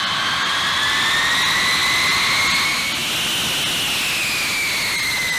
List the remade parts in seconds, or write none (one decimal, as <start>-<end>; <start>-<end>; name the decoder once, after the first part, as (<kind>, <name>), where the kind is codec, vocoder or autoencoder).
none

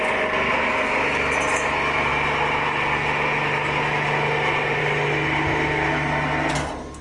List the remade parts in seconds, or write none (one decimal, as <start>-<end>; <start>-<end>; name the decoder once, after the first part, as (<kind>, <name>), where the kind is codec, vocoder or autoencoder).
none

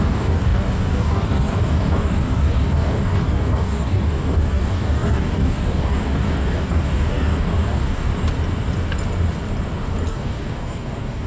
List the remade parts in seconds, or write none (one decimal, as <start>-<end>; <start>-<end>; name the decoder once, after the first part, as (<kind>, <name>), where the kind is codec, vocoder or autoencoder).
0.0-8.1 (codec, DAC); 10.1-11.3

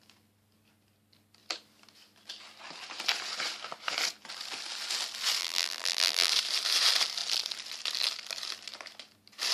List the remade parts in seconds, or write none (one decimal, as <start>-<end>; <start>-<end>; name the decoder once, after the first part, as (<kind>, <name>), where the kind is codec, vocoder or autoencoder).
5.4-6.3 (vocoder, BigVGAN v2)

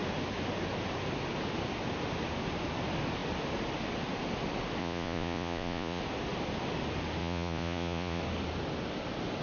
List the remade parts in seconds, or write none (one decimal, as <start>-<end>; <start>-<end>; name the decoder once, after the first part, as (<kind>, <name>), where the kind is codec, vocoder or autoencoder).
4.8-6.0 (vocoder, Vocos); 7.2-8.2

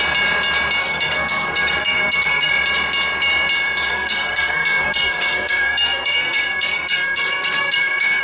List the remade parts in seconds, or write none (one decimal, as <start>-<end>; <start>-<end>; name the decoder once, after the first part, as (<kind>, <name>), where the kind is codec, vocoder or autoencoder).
0.8-2.5 (codec, SNAC); 3.9-8.2

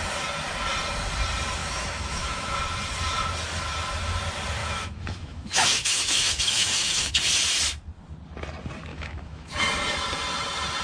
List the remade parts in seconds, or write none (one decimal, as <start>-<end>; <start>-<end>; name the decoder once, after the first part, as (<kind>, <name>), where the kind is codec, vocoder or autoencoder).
1.6-2.6 (autoencoder, DAC-VAE); 4.6-7.1; 8.9-9.5

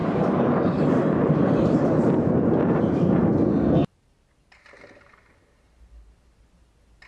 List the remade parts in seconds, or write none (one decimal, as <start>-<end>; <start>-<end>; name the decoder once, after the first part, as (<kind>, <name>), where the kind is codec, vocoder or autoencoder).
0.0-3.3 (vocoder, BigVGAN v2); 3.8-4.8